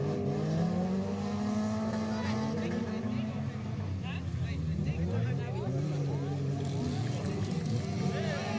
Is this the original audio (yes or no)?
yes